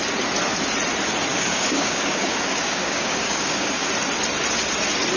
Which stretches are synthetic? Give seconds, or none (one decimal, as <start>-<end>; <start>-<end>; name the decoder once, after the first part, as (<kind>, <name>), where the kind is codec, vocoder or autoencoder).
1.3-3.9 (codec, DAC)